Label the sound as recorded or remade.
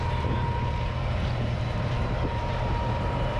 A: remade